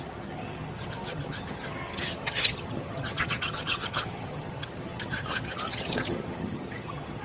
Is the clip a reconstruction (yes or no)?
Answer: yes